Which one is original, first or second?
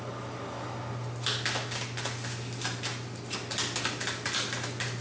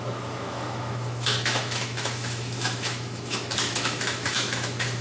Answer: first